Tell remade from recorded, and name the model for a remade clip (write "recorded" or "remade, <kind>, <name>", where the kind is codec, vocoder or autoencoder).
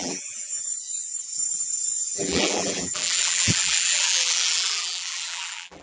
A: remade, vocoder, BigVGAN v2